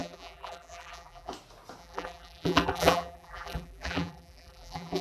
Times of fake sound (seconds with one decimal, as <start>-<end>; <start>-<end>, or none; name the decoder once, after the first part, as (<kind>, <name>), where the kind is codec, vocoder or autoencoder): 0.0-1.3 (vocoder, BigVGAN v2); 1.8-5.0